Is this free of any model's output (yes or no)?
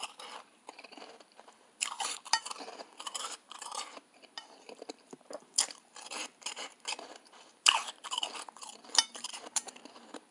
no